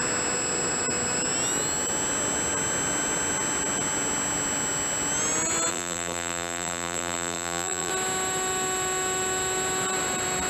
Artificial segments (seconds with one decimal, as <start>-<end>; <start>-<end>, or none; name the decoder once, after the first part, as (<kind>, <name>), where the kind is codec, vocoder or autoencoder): 5.7-7.9 (vocoder, BigVGAN v2)